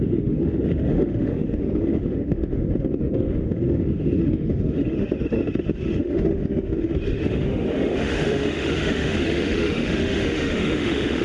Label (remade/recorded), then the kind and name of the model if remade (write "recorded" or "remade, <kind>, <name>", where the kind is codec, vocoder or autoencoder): remade, autoencoder, DAC-VAE